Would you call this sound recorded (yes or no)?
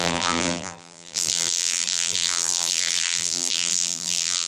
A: no